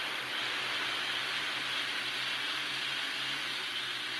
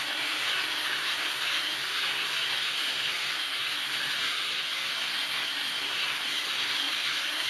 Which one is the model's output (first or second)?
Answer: second